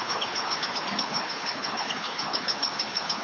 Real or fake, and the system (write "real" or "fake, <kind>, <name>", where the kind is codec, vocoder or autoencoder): fake, codec, HILCodec